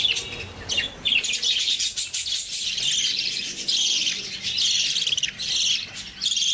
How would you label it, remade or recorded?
recorded